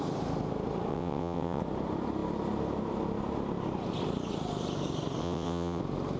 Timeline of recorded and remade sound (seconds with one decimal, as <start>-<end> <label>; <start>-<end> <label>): 0.0-0.9 recorded; 0.9-1.6 remade; 1.6-5.2 recorded; 5.2-5.8 remade; 5.8-6.2 recorded